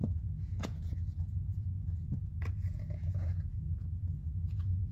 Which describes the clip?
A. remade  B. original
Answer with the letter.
A